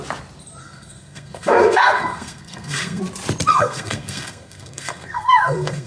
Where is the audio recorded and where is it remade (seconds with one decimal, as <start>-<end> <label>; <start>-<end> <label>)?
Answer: 0.0-0.6 recorded; 0.6-3.0 remade; 3.0-3.5 recorded; 3.5-5.9 remade